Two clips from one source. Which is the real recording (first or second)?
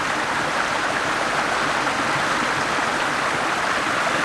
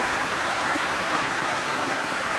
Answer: first